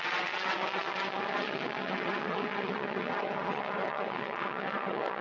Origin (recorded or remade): remade